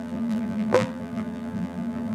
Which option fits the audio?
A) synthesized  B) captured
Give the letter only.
A